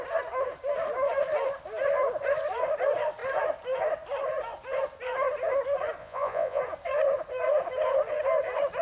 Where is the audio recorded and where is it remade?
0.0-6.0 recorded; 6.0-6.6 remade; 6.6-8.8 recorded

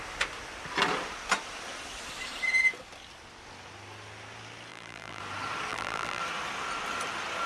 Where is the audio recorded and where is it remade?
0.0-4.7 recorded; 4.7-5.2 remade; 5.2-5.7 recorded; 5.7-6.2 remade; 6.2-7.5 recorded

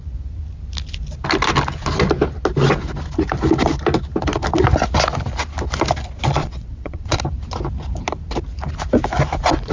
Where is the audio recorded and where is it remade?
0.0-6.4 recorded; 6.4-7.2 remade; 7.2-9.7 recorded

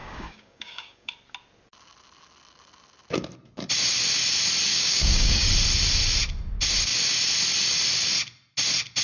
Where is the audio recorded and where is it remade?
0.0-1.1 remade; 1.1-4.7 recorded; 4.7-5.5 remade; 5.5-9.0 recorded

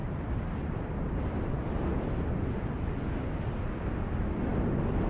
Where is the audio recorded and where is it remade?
0.0-1.5 remade; 1.5-1.9 recorded; 1.9-2.7 remade; 2.7-5.1 recorded

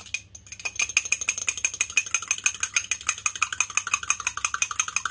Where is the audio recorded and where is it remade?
0.0-5.1 recorded

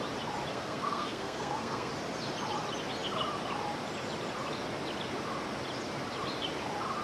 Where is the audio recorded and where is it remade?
0.0-0.5 recorded; 0.5-1.9 remade; 1.9-7.0 recorded

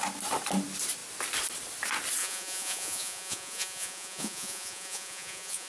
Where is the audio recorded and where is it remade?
0.0-2.2 recorded; 2.2-5.7 remade